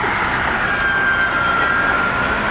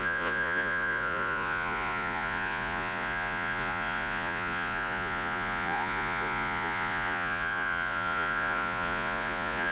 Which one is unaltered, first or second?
first